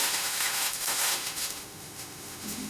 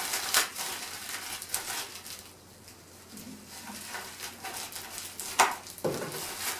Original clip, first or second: second